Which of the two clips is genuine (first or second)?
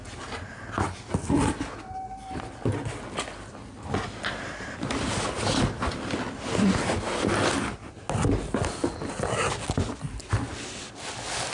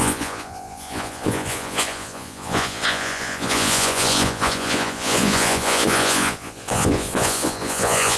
first